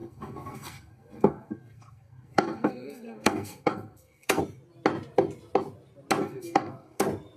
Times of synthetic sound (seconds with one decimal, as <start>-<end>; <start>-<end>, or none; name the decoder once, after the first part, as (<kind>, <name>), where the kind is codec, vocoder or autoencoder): 0.0-4.4 (codec, SNAC); 6.2-7.0

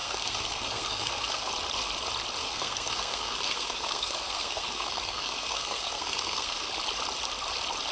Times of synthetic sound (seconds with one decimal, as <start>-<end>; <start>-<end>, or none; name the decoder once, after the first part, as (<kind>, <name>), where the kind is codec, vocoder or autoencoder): 0.0-1.5 (codec, SNAC); 2.4-6.7